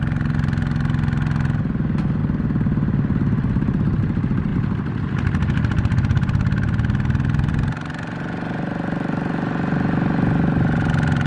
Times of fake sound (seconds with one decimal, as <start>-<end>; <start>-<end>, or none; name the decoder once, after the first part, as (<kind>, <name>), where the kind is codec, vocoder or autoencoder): none